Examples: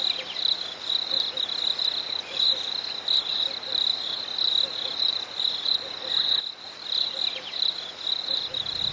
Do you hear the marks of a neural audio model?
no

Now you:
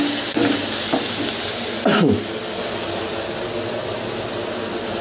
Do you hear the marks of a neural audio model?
no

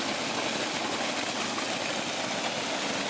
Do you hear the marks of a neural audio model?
no